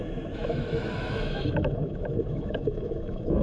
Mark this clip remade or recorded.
remade